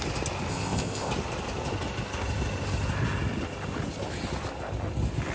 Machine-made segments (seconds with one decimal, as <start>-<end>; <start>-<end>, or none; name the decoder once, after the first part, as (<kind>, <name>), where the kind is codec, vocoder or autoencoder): 0.5-1.1 (codec, ZipCodec)